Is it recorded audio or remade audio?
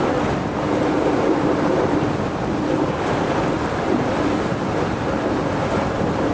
recorded